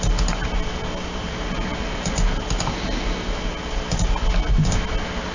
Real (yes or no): yes